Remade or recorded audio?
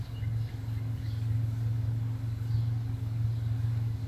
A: remade